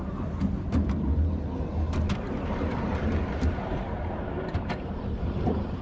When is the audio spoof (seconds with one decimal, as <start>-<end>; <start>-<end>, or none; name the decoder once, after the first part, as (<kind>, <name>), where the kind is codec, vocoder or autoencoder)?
2.7-5.8 (vocoder, BigVGAN v2)